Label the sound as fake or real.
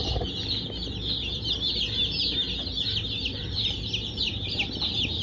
real